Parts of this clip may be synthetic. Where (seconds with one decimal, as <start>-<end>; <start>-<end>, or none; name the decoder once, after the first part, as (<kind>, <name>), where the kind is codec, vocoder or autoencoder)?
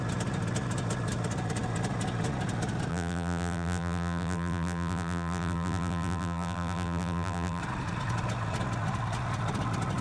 2.9-7.6 (vocoder, BigVGAN v2)